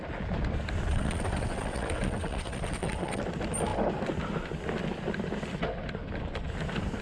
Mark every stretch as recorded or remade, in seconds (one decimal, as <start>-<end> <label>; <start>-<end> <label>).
0.0-0.9 recorded; 0.9-3.2 remade; 3.2-7.0 recorded